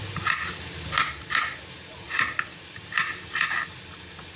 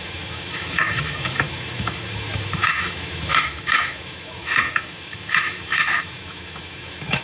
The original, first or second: first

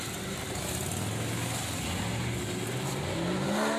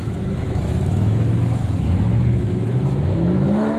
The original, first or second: first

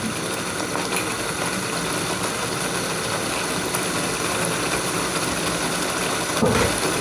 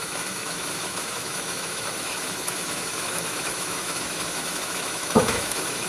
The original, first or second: first